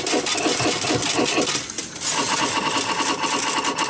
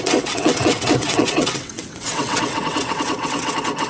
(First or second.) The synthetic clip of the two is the second